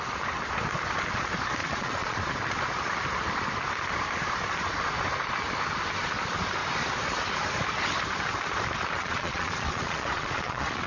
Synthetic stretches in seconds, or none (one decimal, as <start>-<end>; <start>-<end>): 1.6-2.2; 9.0-10.9